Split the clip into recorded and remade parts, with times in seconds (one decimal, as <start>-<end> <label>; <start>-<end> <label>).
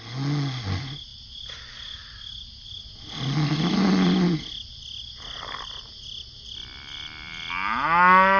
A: 0.0-8.4 recorded